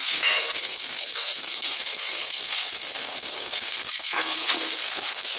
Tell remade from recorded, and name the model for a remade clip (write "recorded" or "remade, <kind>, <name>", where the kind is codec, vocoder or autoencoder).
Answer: remade, codec, SNAC